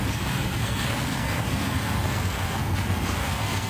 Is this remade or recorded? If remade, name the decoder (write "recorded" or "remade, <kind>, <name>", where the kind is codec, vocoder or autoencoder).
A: remade, codec, SNAC